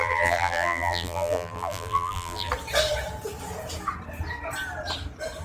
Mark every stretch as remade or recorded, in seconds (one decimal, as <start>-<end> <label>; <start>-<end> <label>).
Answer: 0.0-2.5 remade; 2.5-5.4 recorded